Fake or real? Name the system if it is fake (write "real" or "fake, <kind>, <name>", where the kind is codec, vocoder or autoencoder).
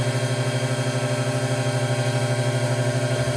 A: real